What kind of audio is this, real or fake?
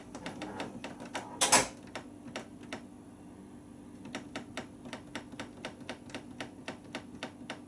real